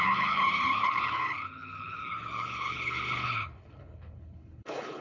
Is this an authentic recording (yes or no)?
no